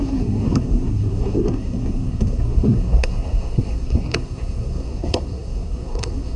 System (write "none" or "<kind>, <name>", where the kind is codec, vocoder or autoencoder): codec, SNAC